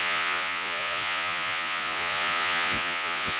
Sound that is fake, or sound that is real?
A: fake